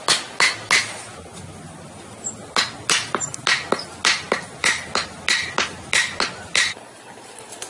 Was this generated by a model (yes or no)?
no